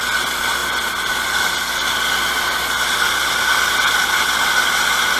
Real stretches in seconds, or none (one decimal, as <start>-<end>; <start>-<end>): 0.0-5.2

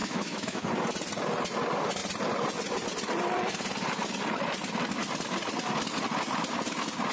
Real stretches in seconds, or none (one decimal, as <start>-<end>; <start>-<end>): 0.7-7.1

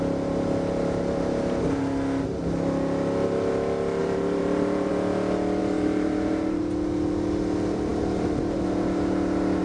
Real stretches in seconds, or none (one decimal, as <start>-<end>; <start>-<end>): 0.0-4.0; 4.9-5.6; 6.6-9.6

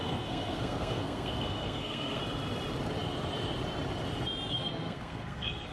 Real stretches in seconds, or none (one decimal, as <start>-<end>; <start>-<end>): 2.2-4.5